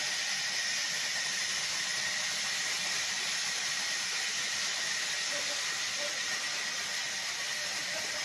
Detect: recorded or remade recorded